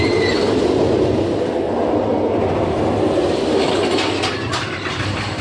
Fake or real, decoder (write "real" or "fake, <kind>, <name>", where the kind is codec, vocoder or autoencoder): real